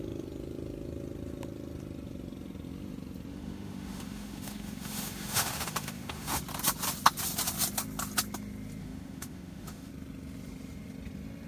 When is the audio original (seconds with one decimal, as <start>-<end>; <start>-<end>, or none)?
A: 0.0-3.3; 6.4-8.8; 9.9-11.5